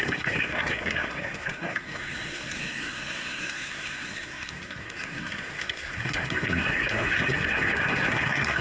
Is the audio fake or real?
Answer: fake